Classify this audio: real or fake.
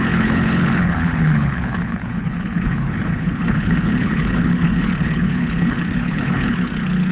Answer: fake